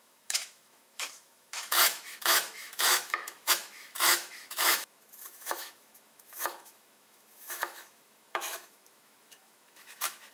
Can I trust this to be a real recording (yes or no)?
no